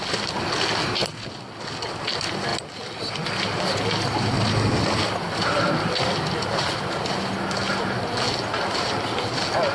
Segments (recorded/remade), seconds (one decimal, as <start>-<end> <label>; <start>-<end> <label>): 0.0-9.7 recorded